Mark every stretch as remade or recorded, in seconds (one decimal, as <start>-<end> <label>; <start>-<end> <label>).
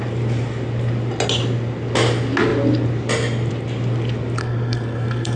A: 0.0-4.4 recorded; 4.4-5.4 remade